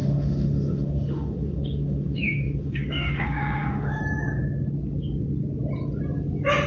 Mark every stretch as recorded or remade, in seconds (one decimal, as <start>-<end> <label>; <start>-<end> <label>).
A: 0.0-4.0 remade; 4.0-6.7 recorded